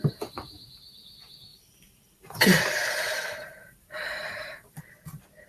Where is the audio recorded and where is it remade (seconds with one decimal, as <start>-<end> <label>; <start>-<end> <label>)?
0.0-1.5 recorded; 1.5-4.8 remade; 4.8-5.5 recorded